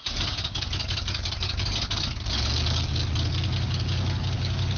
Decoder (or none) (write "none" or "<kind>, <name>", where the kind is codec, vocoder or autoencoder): codec, DAC